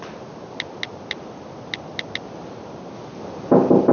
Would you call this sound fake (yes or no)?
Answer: no